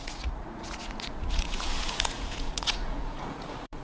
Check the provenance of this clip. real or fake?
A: fake